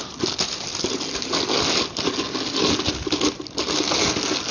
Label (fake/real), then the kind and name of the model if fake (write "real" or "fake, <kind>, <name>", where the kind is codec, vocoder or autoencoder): real